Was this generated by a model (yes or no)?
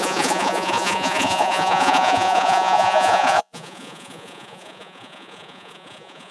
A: yes